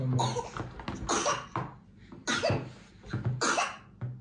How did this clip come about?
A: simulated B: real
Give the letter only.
B